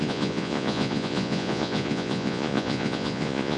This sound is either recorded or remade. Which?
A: remade